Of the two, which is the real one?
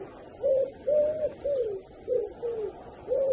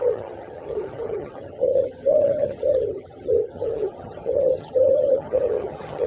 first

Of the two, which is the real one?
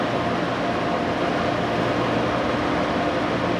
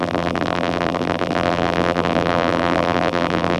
first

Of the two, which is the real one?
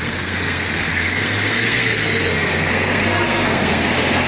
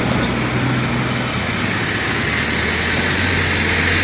second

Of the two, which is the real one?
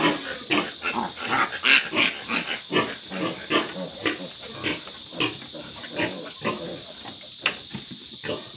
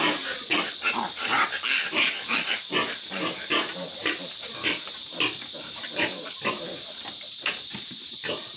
first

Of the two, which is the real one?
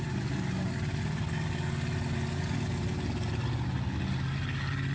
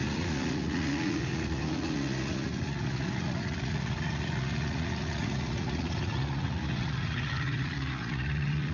first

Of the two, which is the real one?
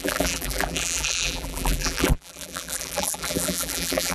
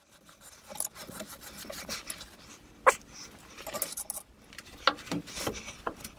second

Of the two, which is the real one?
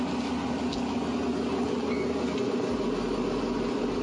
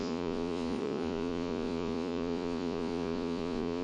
first